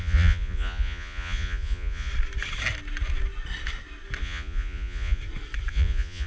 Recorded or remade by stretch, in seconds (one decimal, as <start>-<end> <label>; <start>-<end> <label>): 0.0-2.1 remade; 2.1-4.2 recorded; 4.2-5.2 remade; 5.2-5.7 recorded; 5.7-6.3 remade